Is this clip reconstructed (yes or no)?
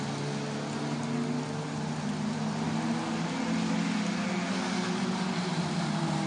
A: no